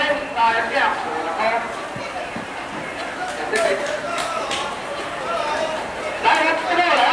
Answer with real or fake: fake